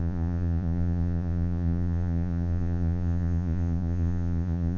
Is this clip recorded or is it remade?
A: remade